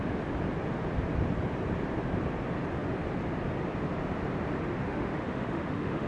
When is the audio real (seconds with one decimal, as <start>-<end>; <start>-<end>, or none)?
0.0-4.6